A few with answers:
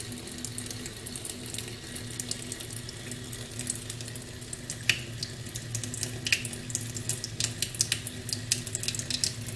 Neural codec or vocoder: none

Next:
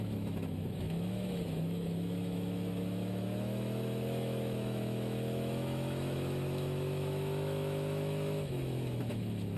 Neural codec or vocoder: autoencoder, DAC-VAE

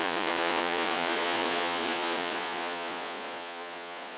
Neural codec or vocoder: vocoder, Vocos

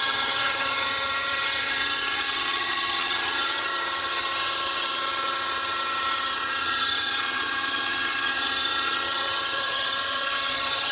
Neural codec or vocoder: vocoder, HiFi-GAN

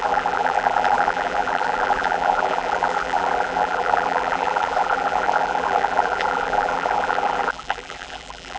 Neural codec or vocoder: vocoder, BigVGAN v2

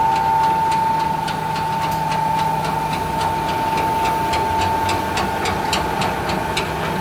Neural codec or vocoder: none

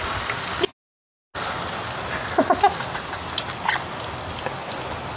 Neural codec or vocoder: none